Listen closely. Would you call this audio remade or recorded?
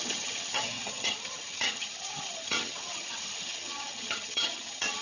remade